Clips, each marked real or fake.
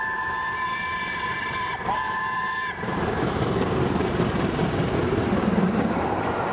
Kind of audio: fake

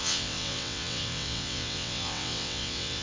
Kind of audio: fake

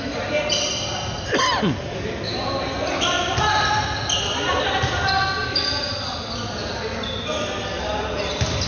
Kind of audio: real